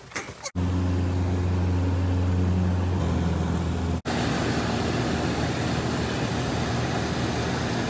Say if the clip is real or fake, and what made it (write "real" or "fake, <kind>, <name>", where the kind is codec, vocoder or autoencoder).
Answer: real